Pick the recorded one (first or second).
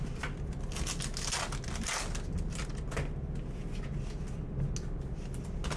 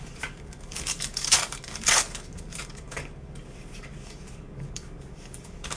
first